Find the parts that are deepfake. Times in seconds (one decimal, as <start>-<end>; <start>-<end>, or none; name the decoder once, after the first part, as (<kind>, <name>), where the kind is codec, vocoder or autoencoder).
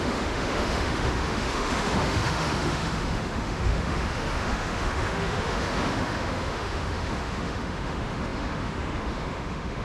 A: 0.0-9.8 (autoencoder, DAC-VAE)